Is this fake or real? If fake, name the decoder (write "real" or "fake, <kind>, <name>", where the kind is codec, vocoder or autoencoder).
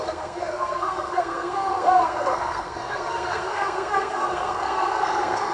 fake, codec, SNAC